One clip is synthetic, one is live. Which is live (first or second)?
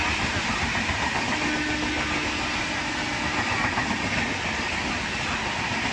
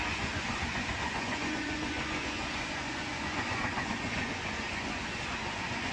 first